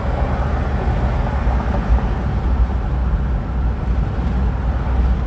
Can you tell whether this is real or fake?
real